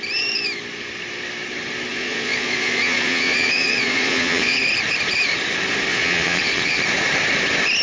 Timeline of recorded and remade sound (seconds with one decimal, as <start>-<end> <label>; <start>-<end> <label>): 0.0-1.9 recorded; 1.9-4.6 remade; 4.6-5.9 recorded; 5.9-6.8 remade; 6.8-7.8 recorded